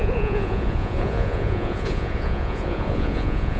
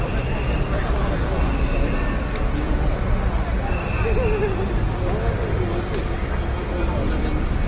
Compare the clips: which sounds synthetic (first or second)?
first